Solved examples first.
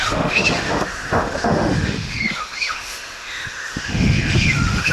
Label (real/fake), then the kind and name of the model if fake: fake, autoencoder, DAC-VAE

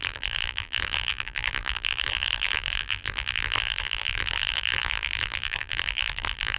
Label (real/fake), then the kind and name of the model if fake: fake, vocoder, BigVGAN v2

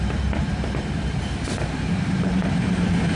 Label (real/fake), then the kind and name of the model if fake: real